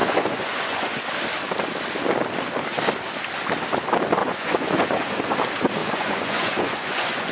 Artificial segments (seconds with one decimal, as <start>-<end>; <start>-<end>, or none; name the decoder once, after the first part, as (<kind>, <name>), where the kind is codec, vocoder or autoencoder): 0.0-1.0 (vocoder, Vocos); 4.2-5.2; 5.8-7.3